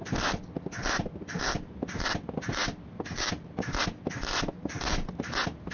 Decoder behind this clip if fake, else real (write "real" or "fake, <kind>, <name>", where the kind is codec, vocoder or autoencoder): real